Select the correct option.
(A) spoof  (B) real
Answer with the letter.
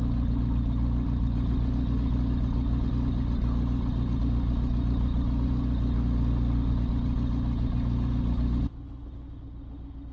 B